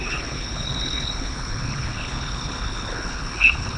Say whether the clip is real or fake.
fake